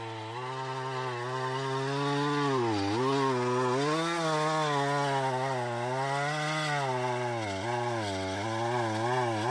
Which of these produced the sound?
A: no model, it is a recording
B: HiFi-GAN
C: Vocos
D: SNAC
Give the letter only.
A